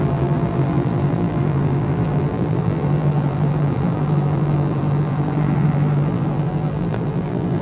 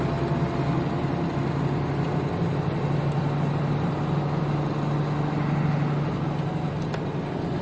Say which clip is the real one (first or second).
second